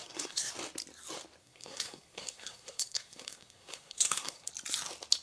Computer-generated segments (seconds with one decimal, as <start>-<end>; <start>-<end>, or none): 0.0-0.5; 1.4-4.5